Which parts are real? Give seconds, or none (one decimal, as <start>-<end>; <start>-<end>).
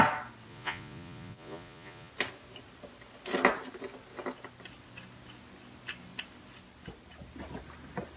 0.0-0.5; 2.1-8.2